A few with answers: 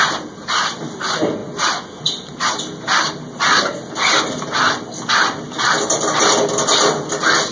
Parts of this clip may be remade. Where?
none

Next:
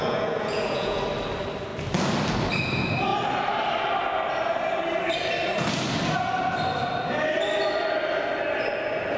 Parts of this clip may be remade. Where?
0.0-1.0 (vocoder, Vocos)

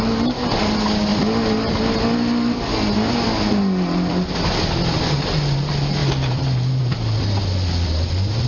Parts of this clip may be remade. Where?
none

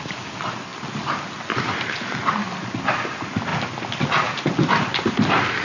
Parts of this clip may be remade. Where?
none

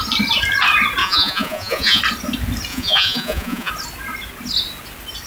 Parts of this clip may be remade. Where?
1.0-2.0 (vocoder, Vocos); 2.7-3.7